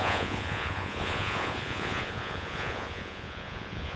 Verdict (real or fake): fake